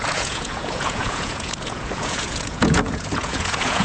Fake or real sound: fake